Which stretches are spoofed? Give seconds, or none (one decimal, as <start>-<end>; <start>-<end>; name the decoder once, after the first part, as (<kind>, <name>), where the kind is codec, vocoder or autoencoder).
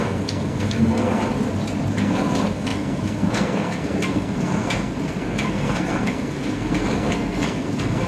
0.0-1.2 (codec, SNAC); 1.9-8.1